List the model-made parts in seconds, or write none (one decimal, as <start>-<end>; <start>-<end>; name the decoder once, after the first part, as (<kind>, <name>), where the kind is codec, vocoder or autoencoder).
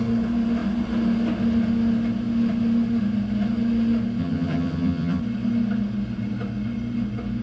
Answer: 4.2-5.2 (vocoder, HiFi-GAN)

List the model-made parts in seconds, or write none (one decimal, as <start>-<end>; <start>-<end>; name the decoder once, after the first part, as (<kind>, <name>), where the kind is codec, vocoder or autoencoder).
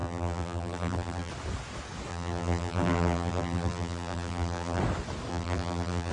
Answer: 0.0-1.3 (vocoder, BigVGAN v2); 2.1-4.8; 5.3-6.1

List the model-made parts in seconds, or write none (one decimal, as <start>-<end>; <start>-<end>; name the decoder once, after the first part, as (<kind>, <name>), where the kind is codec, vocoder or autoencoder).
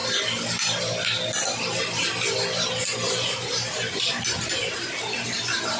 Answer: 2.9-5.8 (vocoder, BigVGAN v2)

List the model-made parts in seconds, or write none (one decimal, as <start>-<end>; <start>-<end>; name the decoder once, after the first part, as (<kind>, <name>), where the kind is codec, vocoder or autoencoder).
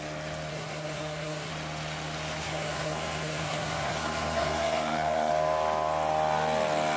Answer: 0.5-1.5 (codec, SNAC); 2.4-5.3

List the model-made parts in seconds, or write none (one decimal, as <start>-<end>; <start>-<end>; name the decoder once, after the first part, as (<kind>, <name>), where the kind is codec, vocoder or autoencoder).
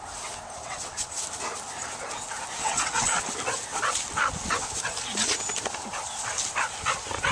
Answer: 0.6-1.2 (vocoder, WaveNeXt); 2.6-3.2